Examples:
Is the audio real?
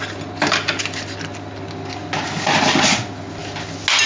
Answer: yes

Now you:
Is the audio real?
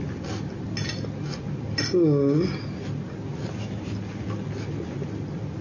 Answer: yes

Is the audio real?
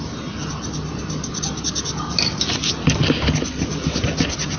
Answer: yes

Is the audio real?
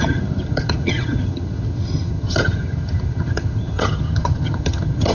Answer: no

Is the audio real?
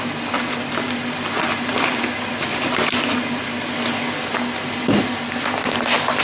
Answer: yes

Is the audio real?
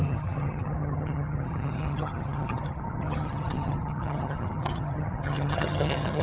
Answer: no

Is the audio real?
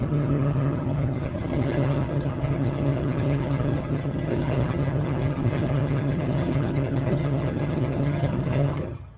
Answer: no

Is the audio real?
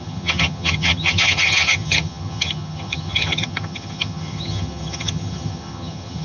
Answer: no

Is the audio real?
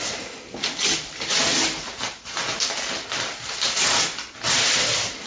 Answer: yes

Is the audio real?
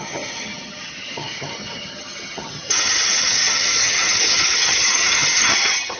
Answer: no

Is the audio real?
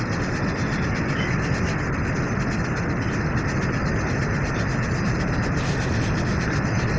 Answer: yes